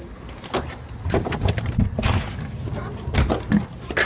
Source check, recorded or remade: recorded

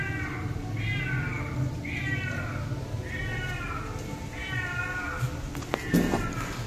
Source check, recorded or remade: recorded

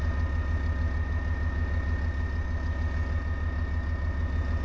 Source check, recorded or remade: recorded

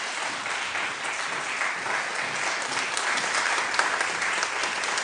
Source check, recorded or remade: recorded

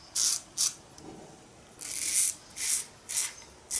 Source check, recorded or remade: recorded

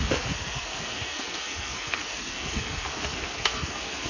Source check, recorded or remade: remade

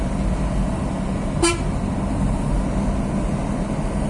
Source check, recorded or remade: recorded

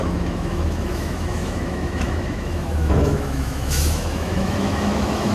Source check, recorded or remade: remade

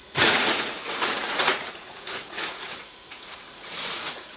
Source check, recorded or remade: remade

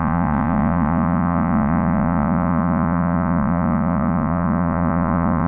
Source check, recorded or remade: remade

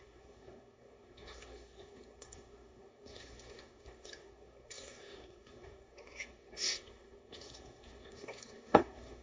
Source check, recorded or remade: remade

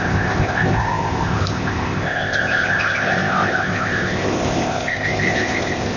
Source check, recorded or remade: remade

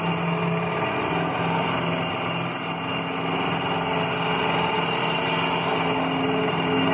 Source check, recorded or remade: recorded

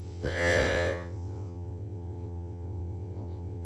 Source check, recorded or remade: remade